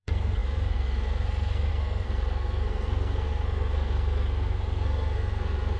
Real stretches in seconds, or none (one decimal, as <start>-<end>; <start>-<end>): none